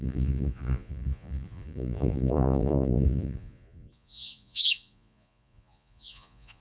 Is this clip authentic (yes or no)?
no